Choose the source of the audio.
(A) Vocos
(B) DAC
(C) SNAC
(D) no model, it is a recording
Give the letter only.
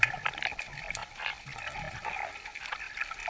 D